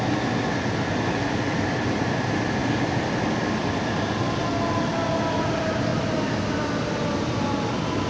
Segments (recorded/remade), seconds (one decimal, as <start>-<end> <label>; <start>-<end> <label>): 0.0-8.1 recorded